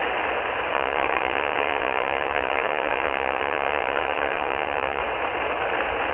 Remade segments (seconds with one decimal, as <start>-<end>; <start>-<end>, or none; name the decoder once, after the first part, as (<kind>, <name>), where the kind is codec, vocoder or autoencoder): 0.7-5.0 (vocoder, WaveNeXt)